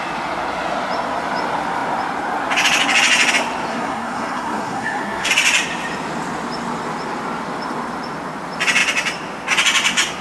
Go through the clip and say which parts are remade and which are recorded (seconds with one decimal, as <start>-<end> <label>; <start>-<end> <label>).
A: 0.0-3.7 recorded; 3.7-5.3 remade; 5.3-10.2 recorded